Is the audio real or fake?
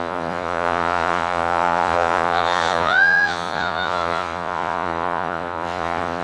fake